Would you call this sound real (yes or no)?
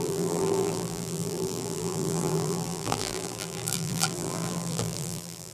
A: no